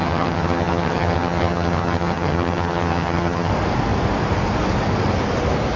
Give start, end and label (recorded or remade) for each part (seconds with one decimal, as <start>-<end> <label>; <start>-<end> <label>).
0.0-3.5 remade; 3.5-5.8 recorded